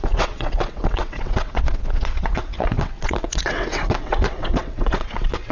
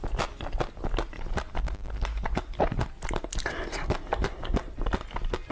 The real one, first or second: second